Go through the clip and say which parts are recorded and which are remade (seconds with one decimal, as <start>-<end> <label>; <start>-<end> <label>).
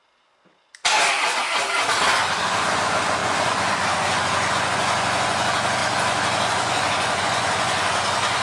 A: 0.0-2.4 recorded; 2.4-8.4 remade